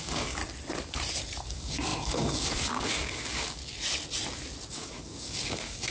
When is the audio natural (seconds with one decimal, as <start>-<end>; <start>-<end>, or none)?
0.4-1.5; 3.6-4.7